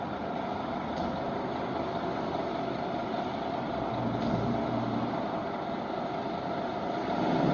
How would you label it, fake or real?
real